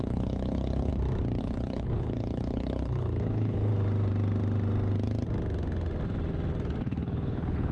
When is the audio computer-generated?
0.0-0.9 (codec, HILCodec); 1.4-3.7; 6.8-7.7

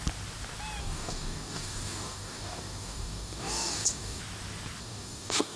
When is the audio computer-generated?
0.8-4.2 (codec, DAC); 4.8-5.6